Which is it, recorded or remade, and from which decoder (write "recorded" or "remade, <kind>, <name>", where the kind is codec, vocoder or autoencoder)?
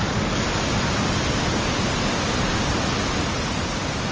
recorded